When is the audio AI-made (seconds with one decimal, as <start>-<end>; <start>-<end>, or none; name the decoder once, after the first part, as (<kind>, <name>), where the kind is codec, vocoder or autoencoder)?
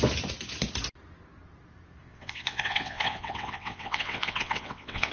2.0-5.1 (vocoder, WaveNeXt)